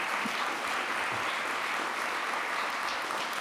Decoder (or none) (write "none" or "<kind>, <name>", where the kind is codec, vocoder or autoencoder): none